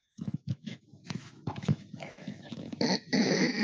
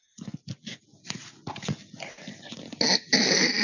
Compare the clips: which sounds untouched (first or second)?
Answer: second